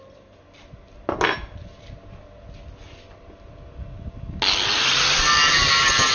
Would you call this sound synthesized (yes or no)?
no